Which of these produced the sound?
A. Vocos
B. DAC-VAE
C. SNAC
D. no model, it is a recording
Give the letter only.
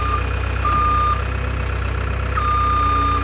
D